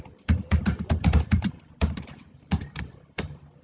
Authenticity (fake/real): fake